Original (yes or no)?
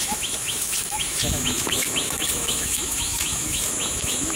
no